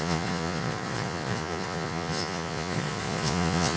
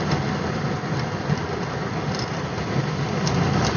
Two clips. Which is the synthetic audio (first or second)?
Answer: first